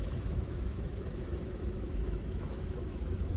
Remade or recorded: remade